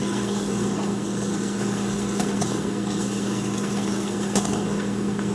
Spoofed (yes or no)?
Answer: yes